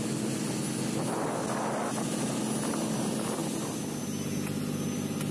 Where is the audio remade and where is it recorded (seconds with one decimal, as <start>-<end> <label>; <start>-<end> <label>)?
0.0-5.3 recorded